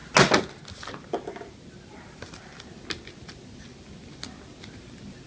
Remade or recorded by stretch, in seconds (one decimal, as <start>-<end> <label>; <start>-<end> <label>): 0.0-5.3 recorded